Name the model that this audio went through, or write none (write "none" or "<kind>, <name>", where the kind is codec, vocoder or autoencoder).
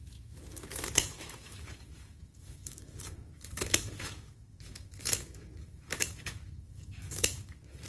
autoencoder, DAC-VAE